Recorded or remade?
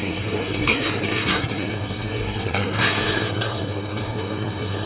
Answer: remade